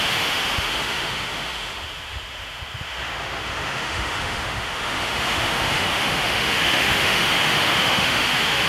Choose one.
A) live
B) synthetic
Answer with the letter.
B